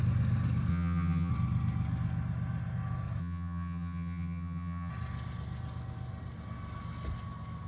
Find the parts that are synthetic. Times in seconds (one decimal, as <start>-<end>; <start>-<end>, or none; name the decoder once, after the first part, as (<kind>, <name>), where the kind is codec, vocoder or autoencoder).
0.7-1.3 (vocoder, HiFi-GAN); 3.2-4.9